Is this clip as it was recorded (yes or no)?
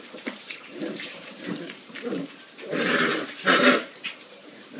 no